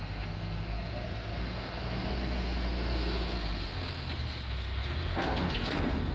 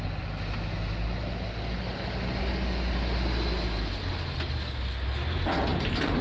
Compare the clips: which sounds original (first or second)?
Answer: second